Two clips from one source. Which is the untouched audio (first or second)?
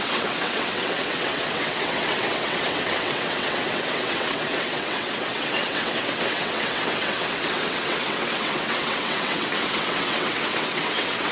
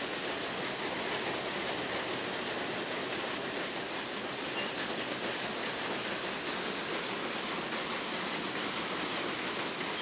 second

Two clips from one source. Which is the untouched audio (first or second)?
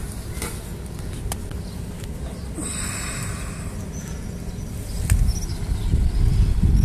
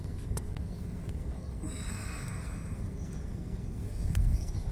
first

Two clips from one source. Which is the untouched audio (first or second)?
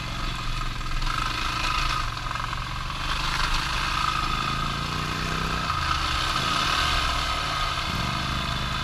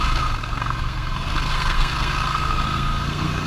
first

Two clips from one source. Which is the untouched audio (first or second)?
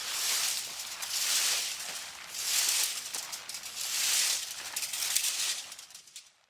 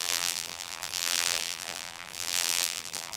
first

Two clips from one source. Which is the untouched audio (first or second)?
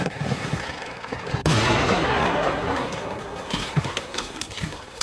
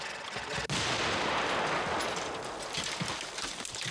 second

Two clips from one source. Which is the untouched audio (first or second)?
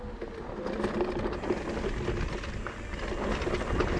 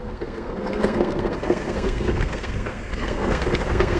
first